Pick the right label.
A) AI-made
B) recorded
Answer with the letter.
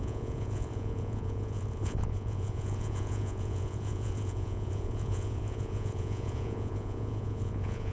A